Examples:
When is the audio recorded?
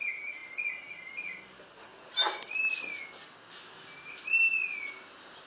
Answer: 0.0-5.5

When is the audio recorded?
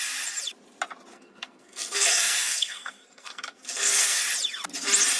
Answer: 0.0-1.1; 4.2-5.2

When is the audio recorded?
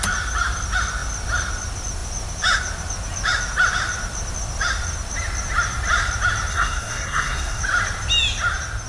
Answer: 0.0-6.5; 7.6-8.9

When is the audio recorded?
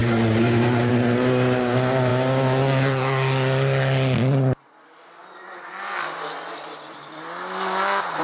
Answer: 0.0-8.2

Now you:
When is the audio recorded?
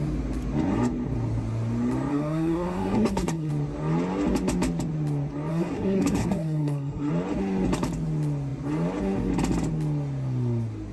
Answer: 0.0-2.1; 3.5-5.5; 7.1-10.9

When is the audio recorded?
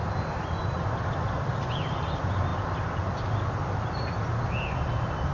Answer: 0.0-5.3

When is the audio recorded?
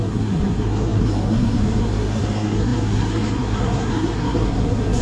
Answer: none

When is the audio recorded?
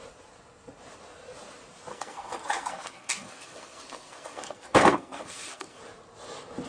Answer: 0.0-1.9; 5.8-6.7